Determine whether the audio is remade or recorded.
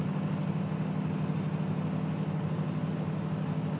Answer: recorded